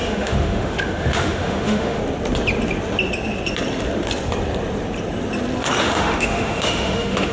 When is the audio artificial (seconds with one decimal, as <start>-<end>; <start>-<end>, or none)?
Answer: 0.0-2.0; 5.8-7.3